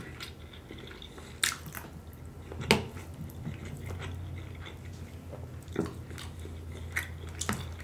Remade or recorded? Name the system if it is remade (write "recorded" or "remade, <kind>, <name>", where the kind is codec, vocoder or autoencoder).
recorded